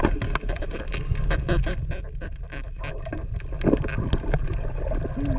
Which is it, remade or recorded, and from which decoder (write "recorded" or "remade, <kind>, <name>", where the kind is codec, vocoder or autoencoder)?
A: recorded